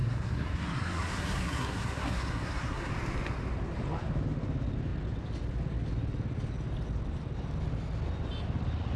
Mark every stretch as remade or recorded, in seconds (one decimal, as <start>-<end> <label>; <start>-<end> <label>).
0.0-2.9 remade; 2.9-9.0 recorded